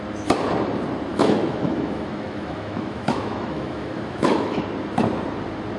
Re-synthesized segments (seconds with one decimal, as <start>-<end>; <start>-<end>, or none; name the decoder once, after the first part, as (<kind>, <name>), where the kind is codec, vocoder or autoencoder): 1.1-4.6 (autoencoder, DAC-VAE)